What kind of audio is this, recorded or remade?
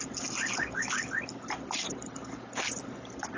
recorded